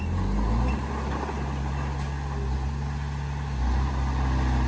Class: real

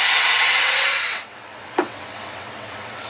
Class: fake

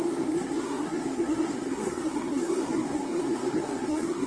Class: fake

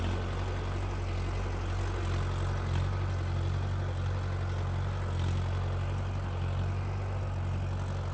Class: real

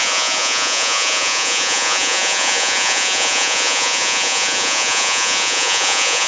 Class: fake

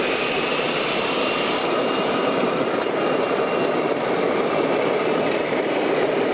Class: fake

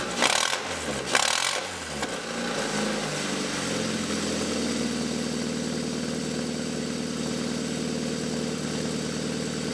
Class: real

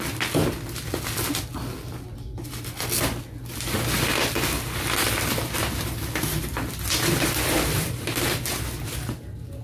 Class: real